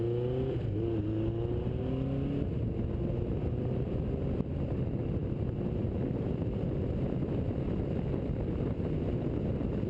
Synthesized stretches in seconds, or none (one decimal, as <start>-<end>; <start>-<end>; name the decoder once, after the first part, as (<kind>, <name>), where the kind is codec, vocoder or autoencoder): none